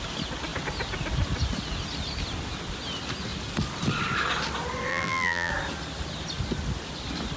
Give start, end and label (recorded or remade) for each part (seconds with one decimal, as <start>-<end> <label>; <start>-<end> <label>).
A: 0.0-4.9 recorded; 4.9-5.5 remade; 5.5-7.4 recorded